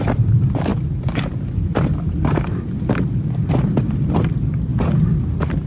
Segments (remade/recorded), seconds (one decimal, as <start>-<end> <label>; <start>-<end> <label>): 0.0-5.7 recorded